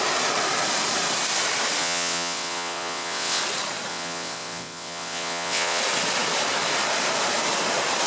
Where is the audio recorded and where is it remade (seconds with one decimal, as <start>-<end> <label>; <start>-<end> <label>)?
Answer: 0.0-1.8 recorded; 1.8-3.4 remade; 3.4-3.9 recorded; 3.9-5.8 remade; 5.8-8.1 recorded

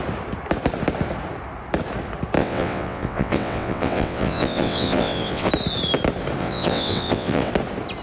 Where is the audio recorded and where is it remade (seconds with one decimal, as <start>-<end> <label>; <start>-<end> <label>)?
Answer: 0.0-2.4 recorded; 2.4-5.5 remade; 5.5-6.4 recorded; 6.4-7.5 remade; 7.5-8.0 recorded

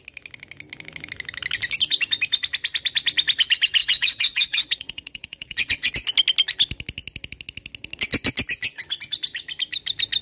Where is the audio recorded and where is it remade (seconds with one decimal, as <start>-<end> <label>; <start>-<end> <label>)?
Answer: 0.0-3.8 recorded; 3.8-5.9 remade; 5.9-10.2 recorded

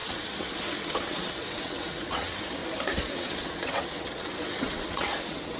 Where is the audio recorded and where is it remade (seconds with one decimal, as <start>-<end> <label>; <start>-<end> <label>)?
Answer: 0.0-2.6 remade; 2.6-3.1 recorded; 3.1-5.6 remade

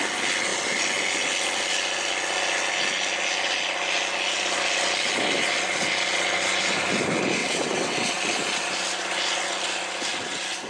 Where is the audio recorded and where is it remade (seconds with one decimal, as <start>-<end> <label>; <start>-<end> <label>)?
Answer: 0.0-7.4 recorded; 7.4-8.1 remade; 8.1-10.7 recorded

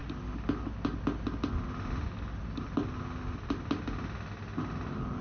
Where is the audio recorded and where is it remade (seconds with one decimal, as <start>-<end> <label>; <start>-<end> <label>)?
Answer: 0.0-5.2 recorded